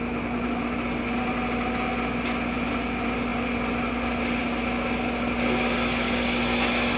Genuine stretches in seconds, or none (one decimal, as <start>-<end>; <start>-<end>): 0.0-7.0